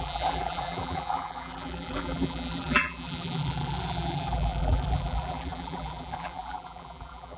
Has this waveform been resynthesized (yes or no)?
yes